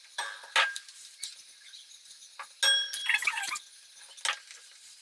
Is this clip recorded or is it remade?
recorded